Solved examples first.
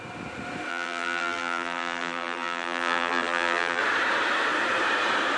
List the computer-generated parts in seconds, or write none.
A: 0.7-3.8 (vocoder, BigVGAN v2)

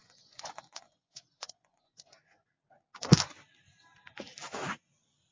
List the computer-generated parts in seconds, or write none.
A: 0.0-2.5 (vocoder, Vocos)